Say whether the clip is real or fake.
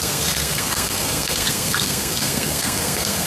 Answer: fake